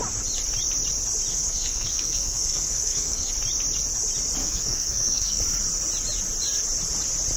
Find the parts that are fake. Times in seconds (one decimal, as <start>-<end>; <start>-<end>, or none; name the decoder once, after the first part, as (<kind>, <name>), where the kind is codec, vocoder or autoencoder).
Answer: 1.3-3.3 (codec, SNAC); 4.4-5.4